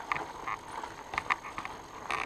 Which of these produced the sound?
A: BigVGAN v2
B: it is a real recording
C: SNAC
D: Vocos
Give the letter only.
B